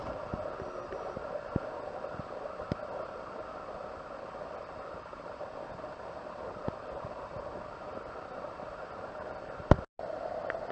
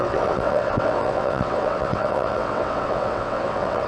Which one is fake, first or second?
second